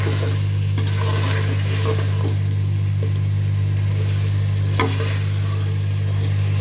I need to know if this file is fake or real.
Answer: real